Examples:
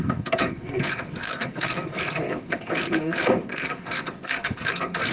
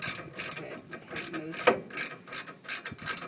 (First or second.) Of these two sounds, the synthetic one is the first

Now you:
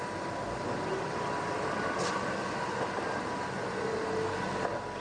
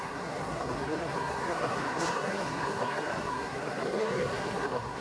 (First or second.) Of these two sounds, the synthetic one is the second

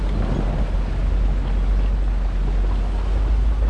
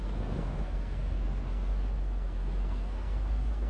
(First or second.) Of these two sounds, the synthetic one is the second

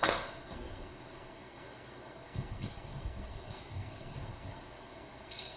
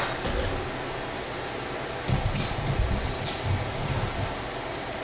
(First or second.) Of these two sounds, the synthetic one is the first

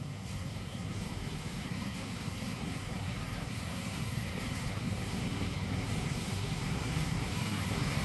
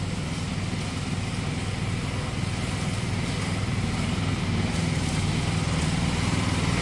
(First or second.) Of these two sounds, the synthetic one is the first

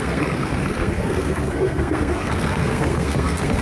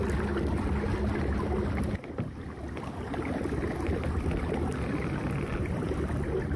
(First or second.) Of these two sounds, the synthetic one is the first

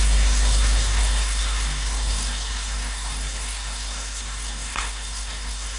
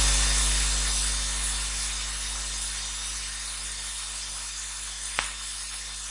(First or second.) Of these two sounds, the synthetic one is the first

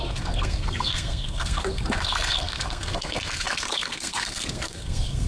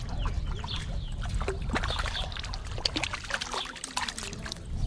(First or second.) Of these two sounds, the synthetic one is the first